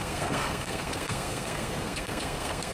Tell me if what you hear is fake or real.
fake